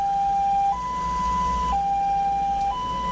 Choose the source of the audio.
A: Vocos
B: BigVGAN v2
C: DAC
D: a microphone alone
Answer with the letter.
D